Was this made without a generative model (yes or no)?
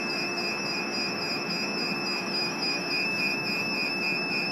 no